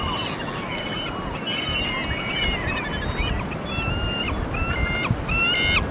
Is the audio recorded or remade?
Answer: recorded